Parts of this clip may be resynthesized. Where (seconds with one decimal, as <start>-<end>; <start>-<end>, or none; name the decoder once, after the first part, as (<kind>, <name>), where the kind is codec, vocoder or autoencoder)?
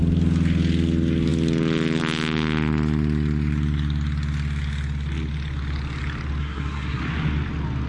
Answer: 6.4-7.0 (codec, SNAC)